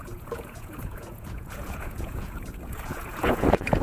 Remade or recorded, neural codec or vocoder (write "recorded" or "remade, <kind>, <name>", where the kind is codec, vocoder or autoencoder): remade, vocoder, Vocos